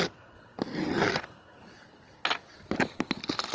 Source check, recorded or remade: recorded